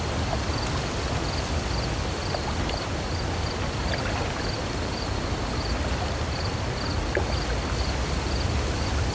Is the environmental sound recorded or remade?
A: remade